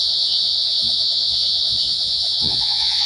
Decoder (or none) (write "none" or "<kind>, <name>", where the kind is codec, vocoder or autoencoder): vocoder, Vocos